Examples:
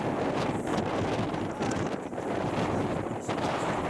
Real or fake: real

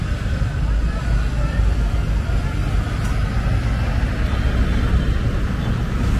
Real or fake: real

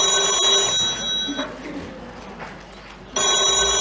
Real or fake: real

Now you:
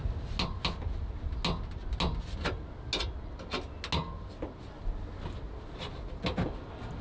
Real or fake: real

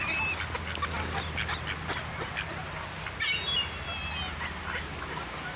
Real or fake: real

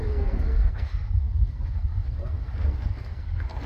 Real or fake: fake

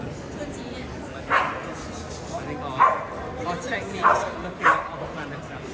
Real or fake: real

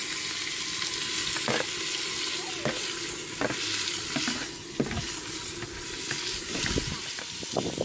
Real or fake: real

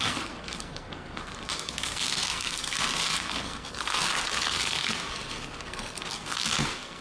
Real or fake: fake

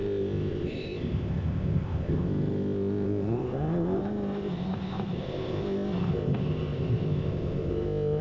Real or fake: fake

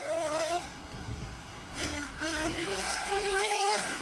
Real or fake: fake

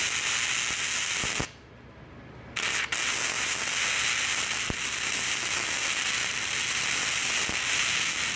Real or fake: real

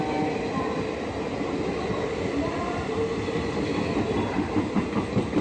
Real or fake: real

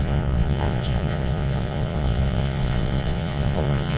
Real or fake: fake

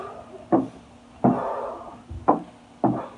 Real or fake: real